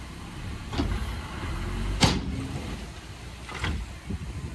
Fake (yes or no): no